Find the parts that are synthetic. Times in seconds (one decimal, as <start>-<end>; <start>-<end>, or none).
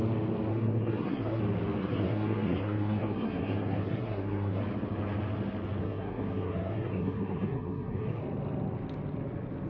0.5-1.4; 1.8-4.6; 5.8-8.2